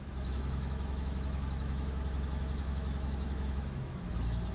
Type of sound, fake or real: fake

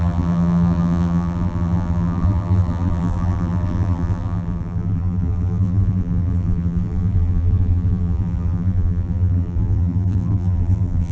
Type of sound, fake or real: fake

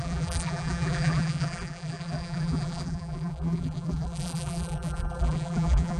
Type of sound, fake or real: fake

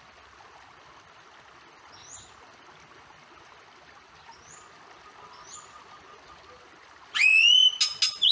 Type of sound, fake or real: real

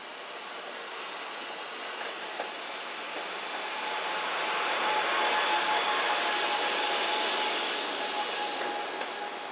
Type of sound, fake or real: real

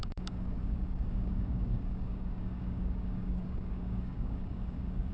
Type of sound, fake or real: fake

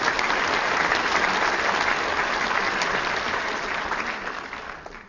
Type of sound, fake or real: real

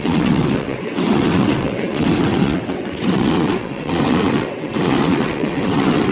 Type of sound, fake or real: fake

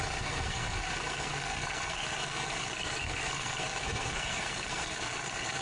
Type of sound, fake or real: fake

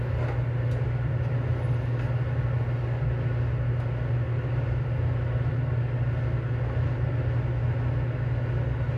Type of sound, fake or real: real